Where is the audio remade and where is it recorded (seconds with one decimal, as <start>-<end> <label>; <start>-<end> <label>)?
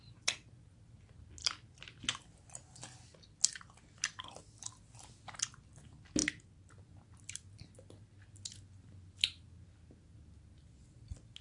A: 0.0-11.4 recorded